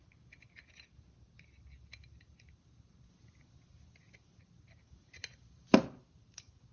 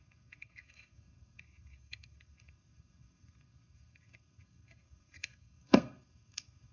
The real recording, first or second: first